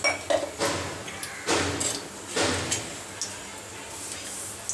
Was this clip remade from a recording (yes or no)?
no